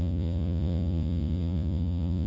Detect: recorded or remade remade